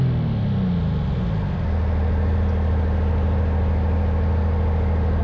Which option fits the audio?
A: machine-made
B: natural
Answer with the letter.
B